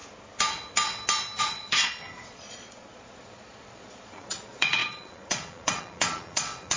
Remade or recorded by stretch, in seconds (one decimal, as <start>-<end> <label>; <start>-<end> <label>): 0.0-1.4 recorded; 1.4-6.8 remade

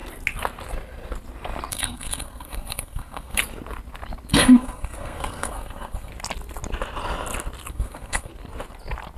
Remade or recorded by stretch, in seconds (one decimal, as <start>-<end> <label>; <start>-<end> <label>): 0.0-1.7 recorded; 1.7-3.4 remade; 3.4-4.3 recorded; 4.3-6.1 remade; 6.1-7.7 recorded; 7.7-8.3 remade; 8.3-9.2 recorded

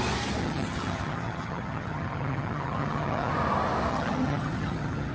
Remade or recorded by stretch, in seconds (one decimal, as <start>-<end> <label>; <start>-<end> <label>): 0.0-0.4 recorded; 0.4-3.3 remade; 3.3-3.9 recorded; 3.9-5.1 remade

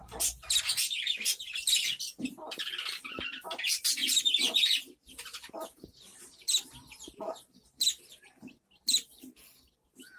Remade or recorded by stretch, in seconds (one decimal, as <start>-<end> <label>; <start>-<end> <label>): 0.0-6.1 recorded; 6.1-9.4 remade; 9.4-10.2 recorded